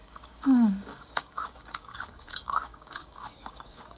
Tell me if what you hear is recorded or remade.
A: remade